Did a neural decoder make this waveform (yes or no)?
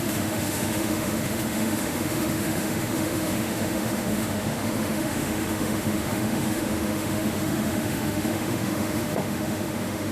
yes